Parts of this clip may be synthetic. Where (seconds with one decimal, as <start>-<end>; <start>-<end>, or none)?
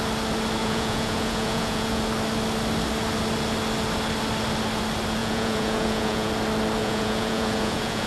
0.6-2.0; 5.2-6.3; 6.8-8.1